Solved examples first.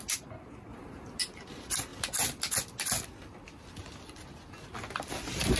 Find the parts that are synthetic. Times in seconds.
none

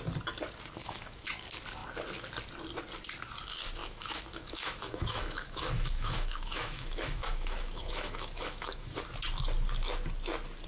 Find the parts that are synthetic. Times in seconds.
0.8-1.4 (autoencoder, DAC-VAE); 3.8-9.0

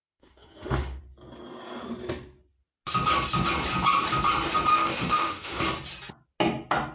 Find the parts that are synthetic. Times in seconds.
0.0-1.0 (autoencoder, DAC-VAE); 4.7-5.6

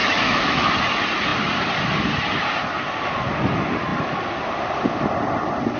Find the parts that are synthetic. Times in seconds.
0.0-0.7 (autoencoder, DAC-VAE)